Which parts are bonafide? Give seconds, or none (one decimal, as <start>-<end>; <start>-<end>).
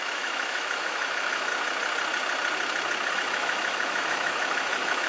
1.5-3.1